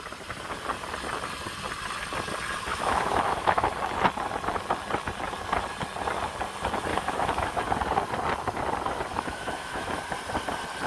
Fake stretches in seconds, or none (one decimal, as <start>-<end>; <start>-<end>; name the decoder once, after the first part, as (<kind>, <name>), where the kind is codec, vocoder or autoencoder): 2.7-3.7 (autoencoder, DAC-VAE); 6.9-7.6; 9.1-10.0